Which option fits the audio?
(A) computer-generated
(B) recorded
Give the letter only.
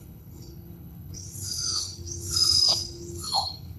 A